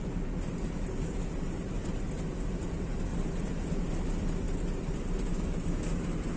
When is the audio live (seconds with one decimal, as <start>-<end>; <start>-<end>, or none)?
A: 0.0-5.3; 5.9-6.4